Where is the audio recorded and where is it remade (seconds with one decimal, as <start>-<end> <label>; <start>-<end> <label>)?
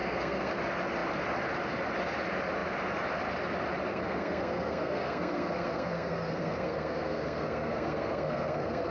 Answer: 0.0-0.5 remade; 0.5-3.9 recorded; 3.9-8.9 remade